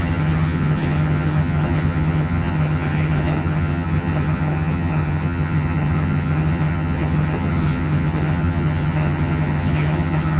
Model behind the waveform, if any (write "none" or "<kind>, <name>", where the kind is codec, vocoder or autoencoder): vocoder, HiFi-GAN